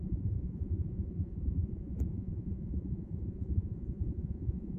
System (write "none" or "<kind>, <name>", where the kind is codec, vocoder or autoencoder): vocoder, Vocos